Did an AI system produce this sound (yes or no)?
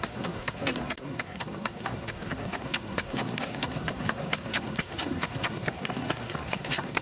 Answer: yes